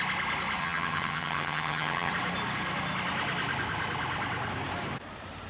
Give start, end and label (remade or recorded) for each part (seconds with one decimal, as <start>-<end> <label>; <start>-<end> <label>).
0.0-0.6 recorded; 0.6-2.1 remade; 2.1-5.5 recorded